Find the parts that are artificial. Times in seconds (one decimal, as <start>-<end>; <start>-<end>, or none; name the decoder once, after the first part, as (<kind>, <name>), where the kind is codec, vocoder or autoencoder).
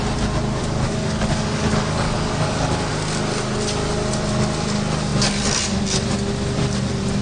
0.6-2.9 (codec, DAC)